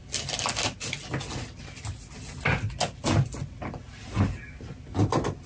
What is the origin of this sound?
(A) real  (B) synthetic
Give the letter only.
A